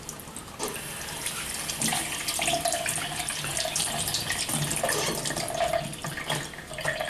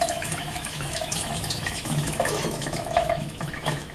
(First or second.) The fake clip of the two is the second